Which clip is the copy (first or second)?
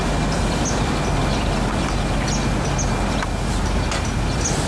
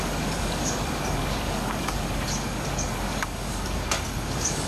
second